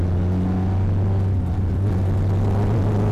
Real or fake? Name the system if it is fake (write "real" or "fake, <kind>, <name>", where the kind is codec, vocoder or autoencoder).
real